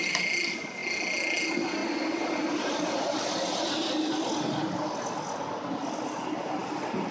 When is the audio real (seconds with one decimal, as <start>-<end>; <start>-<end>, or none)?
0.0-7.1